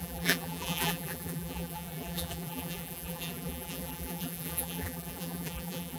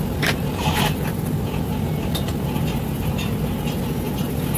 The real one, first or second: second